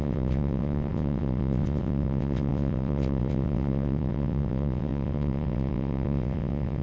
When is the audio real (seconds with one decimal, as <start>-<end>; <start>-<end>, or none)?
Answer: none